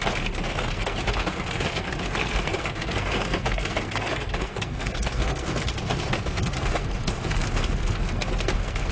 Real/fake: fake